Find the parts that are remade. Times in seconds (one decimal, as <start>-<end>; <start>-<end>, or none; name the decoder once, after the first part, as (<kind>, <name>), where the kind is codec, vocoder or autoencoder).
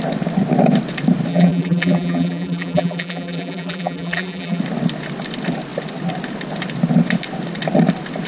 1.3-4.6 (vocoder, BigVGAN v2)